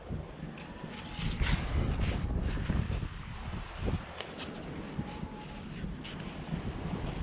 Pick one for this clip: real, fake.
real